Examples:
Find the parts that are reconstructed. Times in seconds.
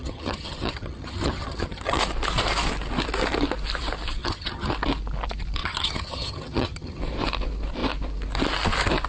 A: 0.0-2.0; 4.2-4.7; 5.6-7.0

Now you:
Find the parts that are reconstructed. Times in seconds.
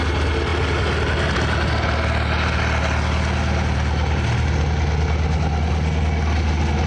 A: none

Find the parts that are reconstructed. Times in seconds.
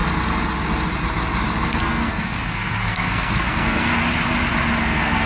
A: 1.8-4.0; 4.8-5.3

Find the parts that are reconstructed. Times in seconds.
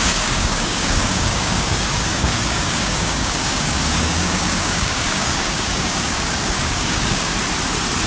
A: 0.0-7.3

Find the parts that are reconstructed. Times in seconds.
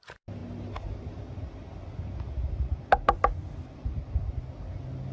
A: none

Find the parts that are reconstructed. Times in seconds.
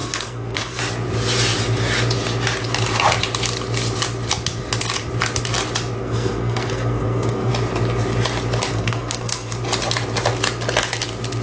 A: 0.0-0.8; 6.0-7.5; 8.7-9.5